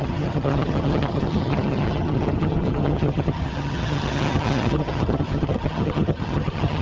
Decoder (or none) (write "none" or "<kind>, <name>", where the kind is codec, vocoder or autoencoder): vocoder, HiFi-GAN